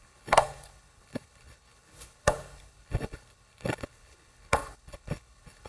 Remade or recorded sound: remade